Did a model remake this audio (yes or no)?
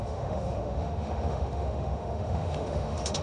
yes